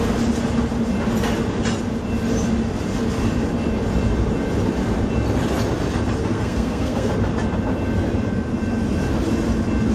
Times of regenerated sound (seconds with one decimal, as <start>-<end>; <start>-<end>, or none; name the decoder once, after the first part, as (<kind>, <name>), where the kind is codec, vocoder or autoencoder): 6.2-7.1 (codec, SNAC)